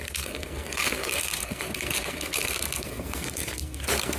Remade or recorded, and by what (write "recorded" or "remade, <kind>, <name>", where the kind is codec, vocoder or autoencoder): remade, codec, SNAC